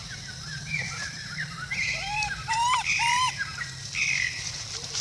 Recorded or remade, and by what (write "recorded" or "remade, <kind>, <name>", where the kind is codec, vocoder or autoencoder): remade, vocoder, BigVGAN v2